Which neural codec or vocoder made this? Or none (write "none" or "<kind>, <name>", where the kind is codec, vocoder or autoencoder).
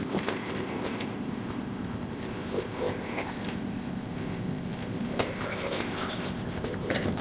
codec, ZipCodec